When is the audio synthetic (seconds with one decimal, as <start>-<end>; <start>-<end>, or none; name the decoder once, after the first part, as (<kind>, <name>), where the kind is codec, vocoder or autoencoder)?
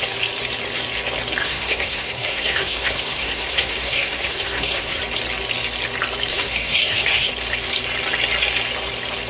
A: 1.4-5.0 (codec, SNAC); 6.3-7.3